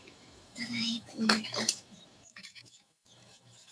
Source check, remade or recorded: remade